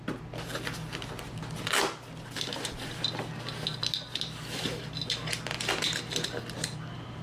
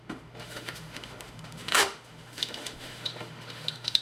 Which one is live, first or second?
first